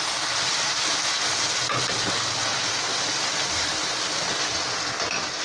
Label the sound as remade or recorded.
recorded